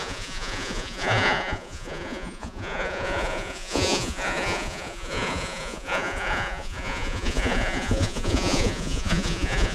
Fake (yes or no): yes